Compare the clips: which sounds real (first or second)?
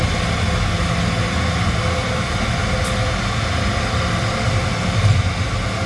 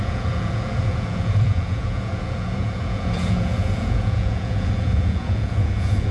first